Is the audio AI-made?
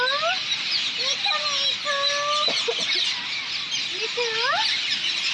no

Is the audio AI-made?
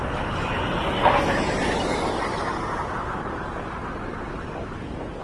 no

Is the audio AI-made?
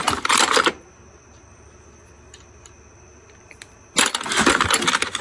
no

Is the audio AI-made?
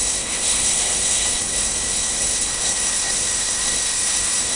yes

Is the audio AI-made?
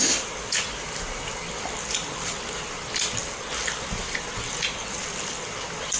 no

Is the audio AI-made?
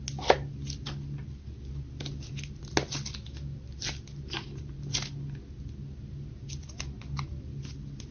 no